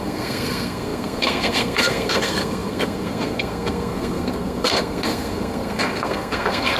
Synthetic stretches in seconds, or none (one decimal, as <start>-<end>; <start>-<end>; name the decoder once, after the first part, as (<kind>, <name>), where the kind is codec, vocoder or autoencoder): 0.0-6.8 (codec, SNAC)